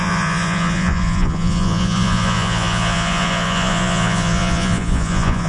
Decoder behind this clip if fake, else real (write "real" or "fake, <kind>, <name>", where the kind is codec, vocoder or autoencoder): fake, vocoder, Vocos